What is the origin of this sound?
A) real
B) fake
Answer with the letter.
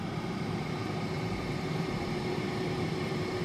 B